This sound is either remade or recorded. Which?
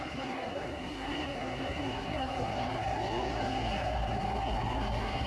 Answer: remade